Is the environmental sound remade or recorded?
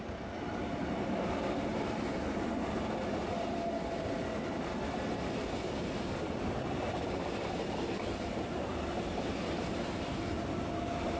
recorded